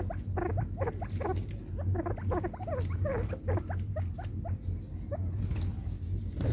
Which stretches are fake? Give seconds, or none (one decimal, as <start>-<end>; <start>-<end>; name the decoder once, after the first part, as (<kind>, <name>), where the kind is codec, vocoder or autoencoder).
none